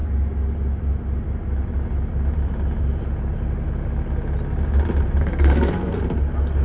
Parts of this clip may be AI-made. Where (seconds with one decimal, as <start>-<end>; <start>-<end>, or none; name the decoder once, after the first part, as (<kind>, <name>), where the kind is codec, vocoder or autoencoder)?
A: 5.3-6.0 (codec, SNAC)

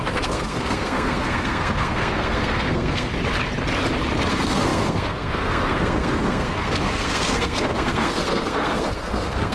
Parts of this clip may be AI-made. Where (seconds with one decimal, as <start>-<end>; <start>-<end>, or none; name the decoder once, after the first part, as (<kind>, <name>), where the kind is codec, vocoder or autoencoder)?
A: 0.0-3.1 (codec, SNAC); 4.3-9.5

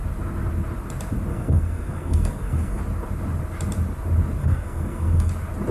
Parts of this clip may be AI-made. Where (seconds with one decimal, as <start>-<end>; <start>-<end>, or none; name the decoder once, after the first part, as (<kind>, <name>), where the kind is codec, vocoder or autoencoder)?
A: 1.3-2.8 (codec, SNAC); 4.4-5.3

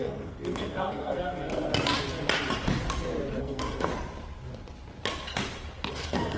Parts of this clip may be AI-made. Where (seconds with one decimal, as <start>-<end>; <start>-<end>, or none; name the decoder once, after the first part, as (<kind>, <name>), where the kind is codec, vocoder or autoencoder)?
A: 0.0-1.7 (codec, SNAC); 3.4-3.9; 5.9-6.4